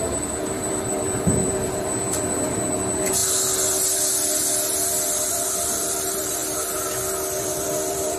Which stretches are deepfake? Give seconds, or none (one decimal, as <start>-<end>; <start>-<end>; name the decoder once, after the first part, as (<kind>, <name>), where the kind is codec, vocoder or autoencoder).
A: 0.0-3.2 (vocoder, BigVGAN v2); 5.3-6.4; 7.4-8.2